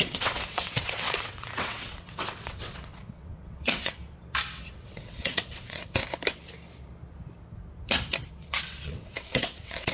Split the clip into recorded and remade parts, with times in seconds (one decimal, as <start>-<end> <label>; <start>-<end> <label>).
0.0-4.0 remade; 4.0-4.5 recorded; 4.5-6.0 remade; 6.0-8.3 recorded; 8.3-9.9 remade